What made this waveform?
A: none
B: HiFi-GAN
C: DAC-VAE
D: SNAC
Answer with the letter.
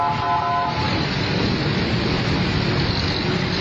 A